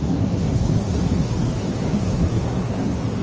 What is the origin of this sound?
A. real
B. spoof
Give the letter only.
B